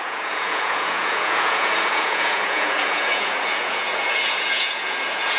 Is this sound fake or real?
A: fake